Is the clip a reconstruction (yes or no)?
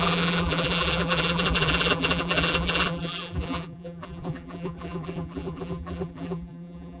yes